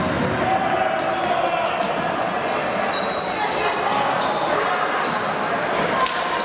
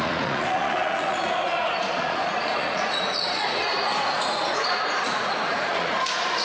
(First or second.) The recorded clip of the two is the first